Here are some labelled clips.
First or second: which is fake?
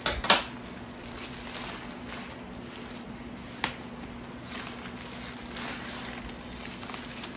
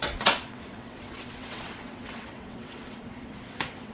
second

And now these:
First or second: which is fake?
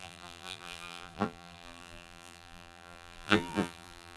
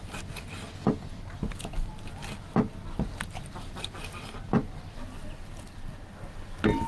first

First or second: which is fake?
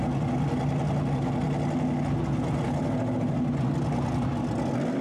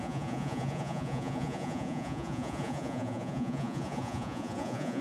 second